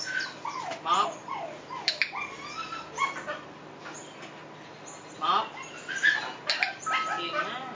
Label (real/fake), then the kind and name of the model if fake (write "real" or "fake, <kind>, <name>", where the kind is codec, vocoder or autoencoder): real